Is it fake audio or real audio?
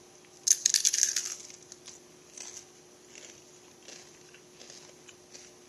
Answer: real